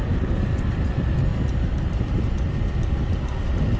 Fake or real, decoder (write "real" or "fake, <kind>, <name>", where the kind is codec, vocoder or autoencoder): real